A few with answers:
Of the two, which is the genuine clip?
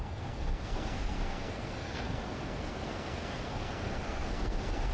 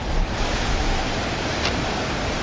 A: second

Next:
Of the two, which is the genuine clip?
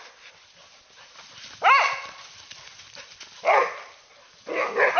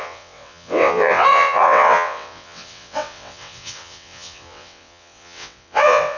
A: first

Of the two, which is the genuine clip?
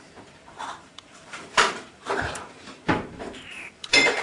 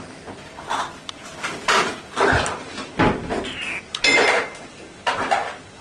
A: second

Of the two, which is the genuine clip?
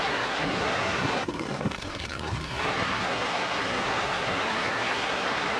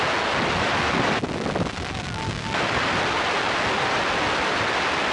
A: second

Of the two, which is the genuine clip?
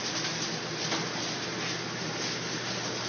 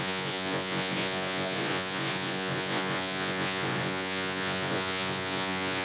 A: first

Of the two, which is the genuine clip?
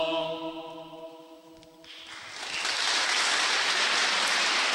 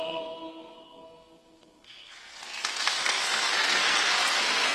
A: first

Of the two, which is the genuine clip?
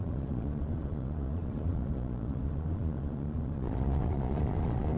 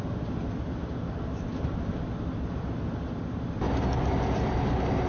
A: second